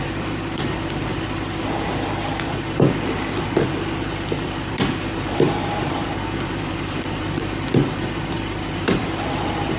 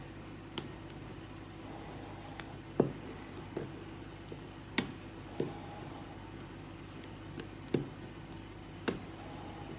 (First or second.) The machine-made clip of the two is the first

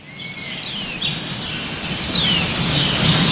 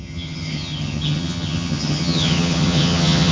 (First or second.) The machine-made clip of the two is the second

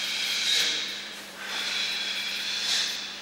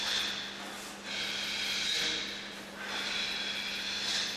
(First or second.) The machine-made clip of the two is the first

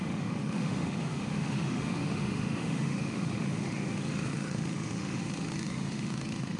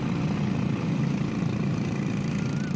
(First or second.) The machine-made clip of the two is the first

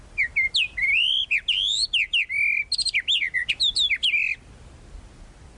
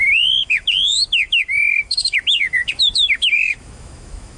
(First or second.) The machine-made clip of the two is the second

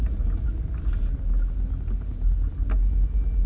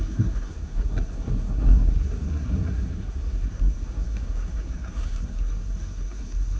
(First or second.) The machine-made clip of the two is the second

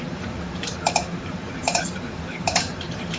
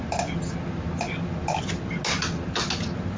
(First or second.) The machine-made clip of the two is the first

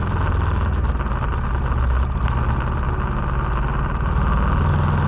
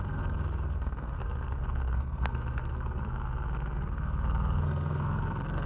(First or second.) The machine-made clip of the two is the second